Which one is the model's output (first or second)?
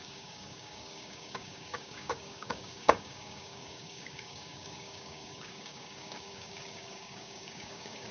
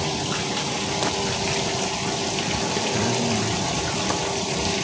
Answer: first